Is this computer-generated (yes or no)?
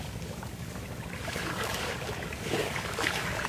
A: yes